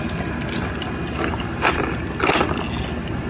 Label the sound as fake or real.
real